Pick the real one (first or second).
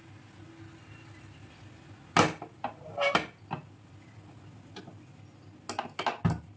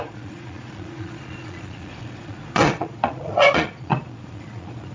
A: first